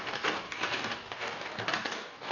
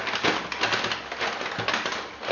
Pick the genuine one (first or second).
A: second